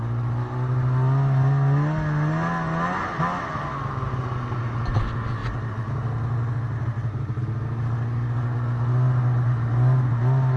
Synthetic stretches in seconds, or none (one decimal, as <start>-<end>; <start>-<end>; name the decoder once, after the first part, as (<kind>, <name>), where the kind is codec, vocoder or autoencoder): none